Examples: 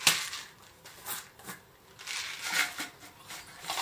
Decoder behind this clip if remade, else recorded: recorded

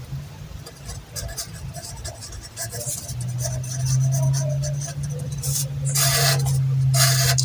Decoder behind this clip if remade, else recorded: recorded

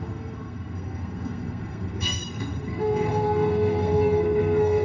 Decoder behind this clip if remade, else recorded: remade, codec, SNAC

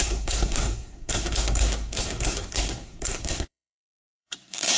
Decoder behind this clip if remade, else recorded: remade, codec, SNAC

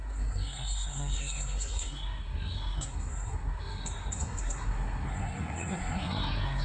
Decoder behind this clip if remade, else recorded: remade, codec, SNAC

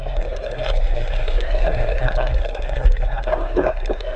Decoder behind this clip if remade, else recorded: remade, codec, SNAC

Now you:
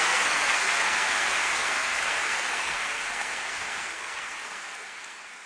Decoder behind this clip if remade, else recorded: remade, codec, SNAC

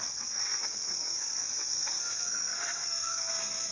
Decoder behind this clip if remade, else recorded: remade, codec, SNAC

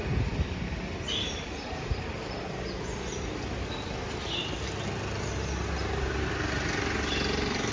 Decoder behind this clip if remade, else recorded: recorded